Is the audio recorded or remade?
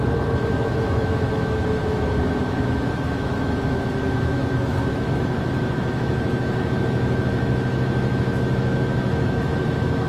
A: remade